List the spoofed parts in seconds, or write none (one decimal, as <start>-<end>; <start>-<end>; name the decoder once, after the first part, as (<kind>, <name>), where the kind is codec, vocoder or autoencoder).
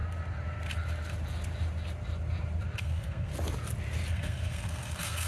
2.8-3.3 (codec, SNAC); 4.1-5.3